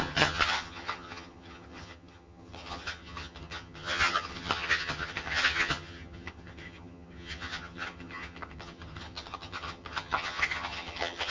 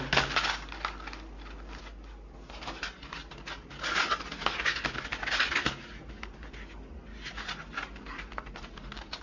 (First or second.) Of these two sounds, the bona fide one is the second